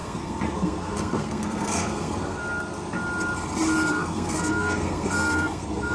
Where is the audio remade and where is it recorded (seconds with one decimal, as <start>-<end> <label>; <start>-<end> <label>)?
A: 0.0-2.4 remade; 2.4-3.9 recorded; 3.9-5.9 remade